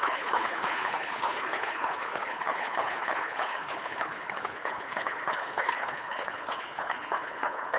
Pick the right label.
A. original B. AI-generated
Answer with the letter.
B